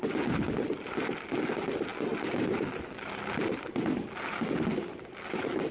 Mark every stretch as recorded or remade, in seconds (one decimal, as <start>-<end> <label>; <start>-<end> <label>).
0.0-5.7 recorded